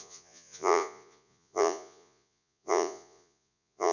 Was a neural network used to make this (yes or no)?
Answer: yes